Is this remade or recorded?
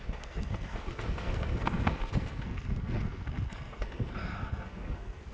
remade